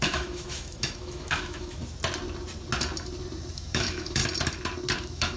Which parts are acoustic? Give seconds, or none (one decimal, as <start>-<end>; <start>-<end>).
1.8-3.5; 4.2-5.0